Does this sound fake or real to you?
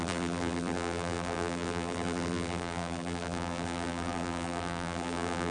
fake